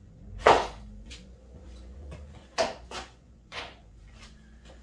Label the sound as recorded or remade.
remade